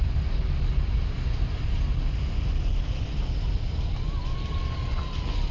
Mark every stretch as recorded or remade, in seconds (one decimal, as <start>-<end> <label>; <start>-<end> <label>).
0.0-5.5 recorded